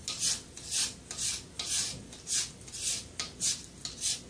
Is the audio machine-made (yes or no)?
no